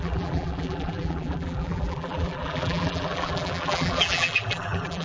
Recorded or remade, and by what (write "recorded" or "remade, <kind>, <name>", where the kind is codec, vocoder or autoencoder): remade, vocoder, BigVGAN v2